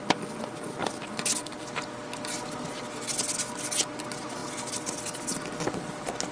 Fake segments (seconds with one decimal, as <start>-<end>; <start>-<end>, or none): none